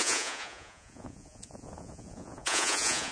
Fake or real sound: fake